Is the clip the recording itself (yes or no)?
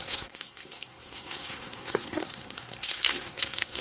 no